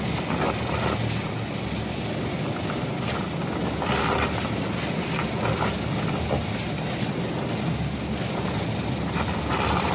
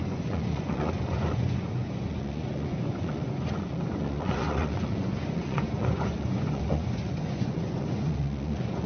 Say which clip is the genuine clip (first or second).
first